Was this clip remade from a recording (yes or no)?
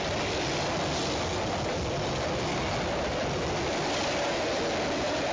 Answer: no